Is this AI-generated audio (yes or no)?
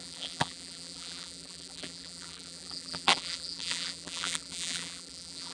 yes